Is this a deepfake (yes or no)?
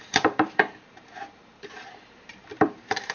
yes